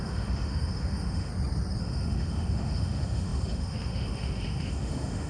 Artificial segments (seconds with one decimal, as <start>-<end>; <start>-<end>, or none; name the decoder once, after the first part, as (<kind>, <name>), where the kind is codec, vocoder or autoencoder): 0.0-1.3 (autoencoder, DAC-VAE); 1.8-5.3